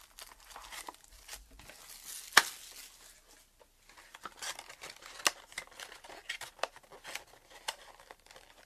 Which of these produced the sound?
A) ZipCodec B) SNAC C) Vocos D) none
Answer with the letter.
D